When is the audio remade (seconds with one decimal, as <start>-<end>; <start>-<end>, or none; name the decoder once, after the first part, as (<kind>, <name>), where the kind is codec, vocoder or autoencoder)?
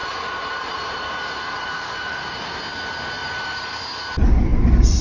0.0-2.6 (vocoder, BigVGAN v2); 3.2-3.7